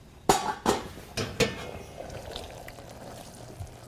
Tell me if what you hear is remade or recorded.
recorded